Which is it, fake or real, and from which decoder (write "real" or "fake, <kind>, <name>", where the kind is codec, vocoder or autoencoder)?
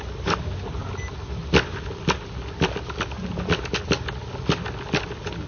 real